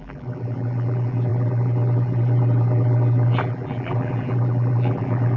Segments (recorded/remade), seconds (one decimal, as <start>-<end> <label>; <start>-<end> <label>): 0.0-5.4 remade